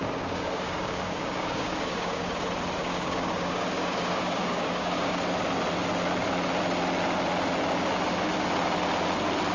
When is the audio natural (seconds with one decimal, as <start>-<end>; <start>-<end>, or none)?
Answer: 2.3-2.8; 5.2-9.5